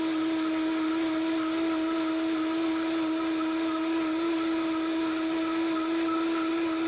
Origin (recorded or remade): recorded